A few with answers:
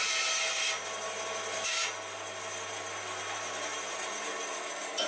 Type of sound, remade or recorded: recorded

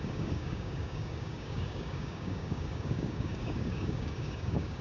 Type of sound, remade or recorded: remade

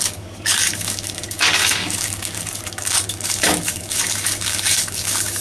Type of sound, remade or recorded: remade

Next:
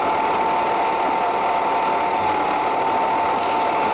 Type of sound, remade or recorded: recorded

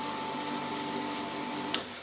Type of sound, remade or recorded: recorded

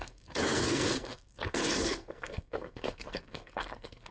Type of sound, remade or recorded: remade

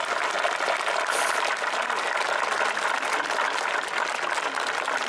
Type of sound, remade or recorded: recorded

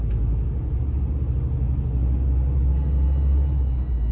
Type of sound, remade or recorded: recorded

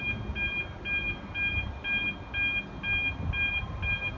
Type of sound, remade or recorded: recorded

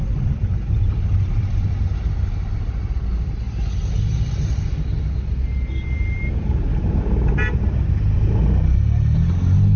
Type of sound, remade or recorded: recorded